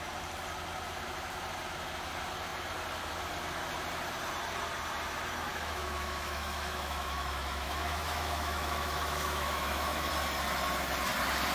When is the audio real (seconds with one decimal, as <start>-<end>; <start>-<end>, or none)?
0.0-5.5; 10.1-11.5